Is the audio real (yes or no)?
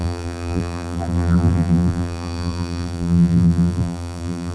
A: no